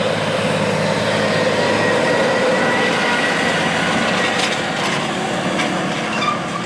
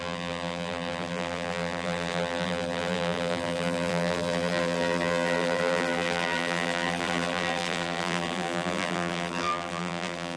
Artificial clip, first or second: second